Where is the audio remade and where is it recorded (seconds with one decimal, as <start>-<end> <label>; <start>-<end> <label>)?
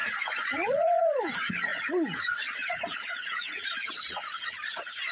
0.0-5.1 remade